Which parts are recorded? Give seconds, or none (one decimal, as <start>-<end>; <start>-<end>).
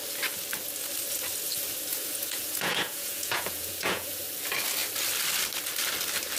0.0-1.9; 4.2-6.4